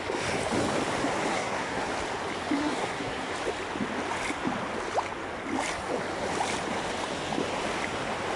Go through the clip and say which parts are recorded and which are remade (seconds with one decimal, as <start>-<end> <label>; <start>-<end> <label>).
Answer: 0.0-1.3 recorded; 1.3-1.9 remade; 1.9-2.6 recorded; 2.6-3.3 remade; 3.3-8.4 recorded